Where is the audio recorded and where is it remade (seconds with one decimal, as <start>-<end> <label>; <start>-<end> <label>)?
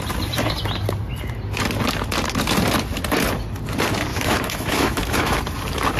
0.0-4.1 recorded; 4.1-5.4 remade; 5.4-6.0 recorded